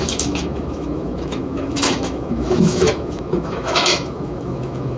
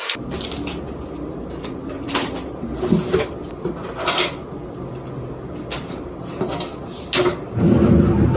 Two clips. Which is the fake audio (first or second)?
first